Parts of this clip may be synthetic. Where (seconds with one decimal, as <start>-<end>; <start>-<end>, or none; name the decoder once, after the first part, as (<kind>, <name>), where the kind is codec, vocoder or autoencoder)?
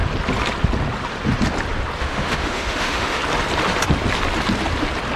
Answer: 2.0-3.2 (autoencoder, DAC-VAE)